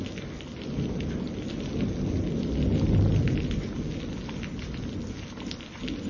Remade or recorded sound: recorded